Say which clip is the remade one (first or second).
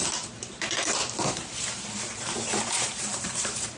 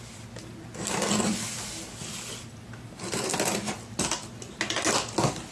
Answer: first